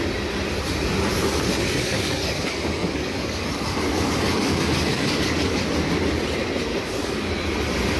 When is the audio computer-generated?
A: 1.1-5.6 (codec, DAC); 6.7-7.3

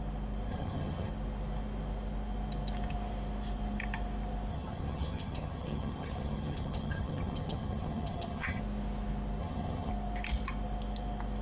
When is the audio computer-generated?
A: 0.5-1.1 (vocoder, HiFi-GAN); 4.5-8.6; 9.4-9.9

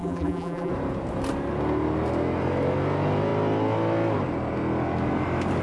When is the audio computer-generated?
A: 0.0-0.7 (vocoder, BigVGAN v2)

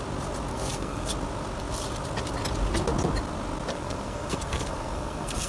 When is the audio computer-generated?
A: 0.5-1.1 (codec, SNAC); 3.7-5.5